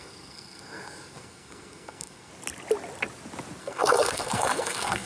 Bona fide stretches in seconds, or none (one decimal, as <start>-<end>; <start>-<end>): 2.3-3.6